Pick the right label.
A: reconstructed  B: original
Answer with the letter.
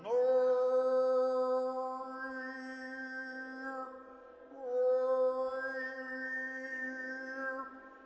B